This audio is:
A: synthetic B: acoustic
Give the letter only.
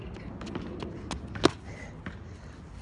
B